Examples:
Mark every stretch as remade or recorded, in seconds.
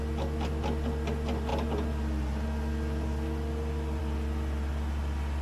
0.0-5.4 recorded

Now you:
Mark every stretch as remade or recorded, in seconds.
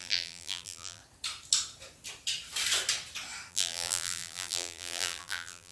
0.0-1.0 remade; 1.0-3.5 recorded; 3.5-5.7 remade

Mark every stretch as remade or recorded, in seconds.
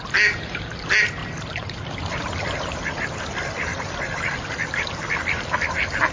0.0-6.1 recorded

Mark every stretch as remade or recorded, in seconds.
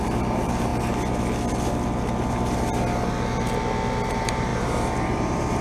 0.0-0.7 remade; 0.7-4.1 recorded; 4.1-5.6 remade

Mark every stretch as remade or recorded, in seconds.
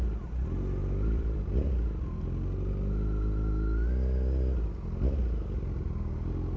0.0-0.8 recorded; 0.8-1.4 remade; 1.4-6.6 recorded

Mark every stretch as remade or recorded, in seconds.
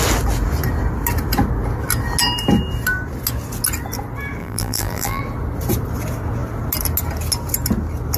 0.0-4.4 recorded; 4.4-5.2 remade; 5.2-8.2 recorded